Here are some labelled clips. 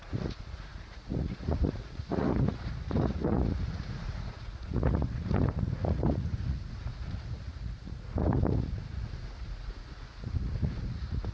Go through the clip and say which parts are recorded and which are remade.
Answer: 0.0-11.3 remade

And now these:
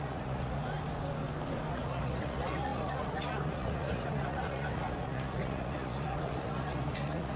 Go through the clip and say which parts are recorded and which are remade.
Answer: 0.0-0.6 remade; 0.6-1.7 recorded; 1.7-7.4 remade

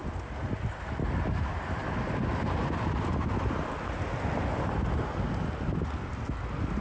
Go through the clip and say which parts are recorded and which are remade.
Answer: 0.0-6.8 recorded

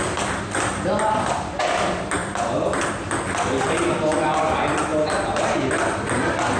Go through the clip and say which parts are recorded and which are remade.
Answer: 0.0-6.6 recorded

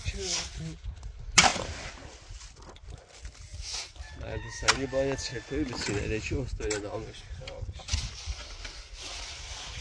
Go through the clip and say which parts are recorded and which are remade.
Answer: 0.0-9.8 recorded

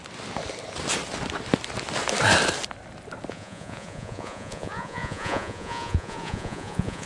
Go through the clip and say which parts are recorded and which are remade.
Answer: 0.0-3.3 recorded; 3.3-7.1 remade

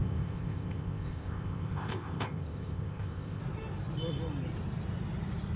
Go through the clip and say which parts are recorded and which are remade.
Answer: 0.0-3.4 remade; 3.4-5.6 recorded